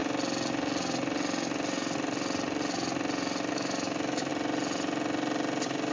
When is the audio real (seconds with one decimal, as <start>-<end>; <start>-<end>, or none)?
0.0-3.5; 4.3-5.9